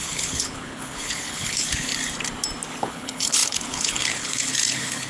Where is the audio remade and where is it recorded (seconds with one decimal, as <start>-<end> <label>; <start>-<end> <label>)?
0.0-1.9 remade; 1.9-2.8 recorded; 2.8-5.1 remade